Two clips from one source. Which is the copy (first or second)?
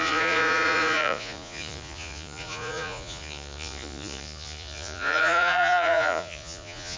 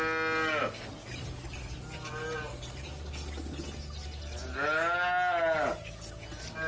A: first